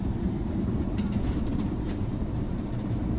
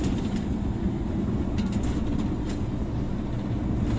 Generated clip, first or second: first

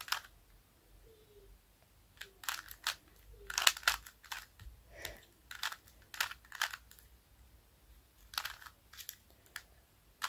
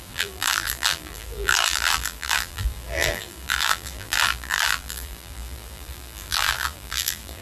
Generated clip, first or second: second